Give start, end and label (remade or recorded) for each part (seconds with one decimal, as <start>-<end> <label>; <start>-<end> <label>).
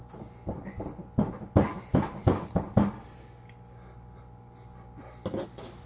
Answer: 0.0-5.9 recorded